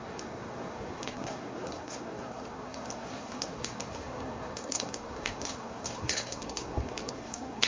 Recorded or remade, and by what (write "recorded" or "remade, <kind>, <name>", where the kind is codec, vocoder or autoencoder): remade, codec, SNAC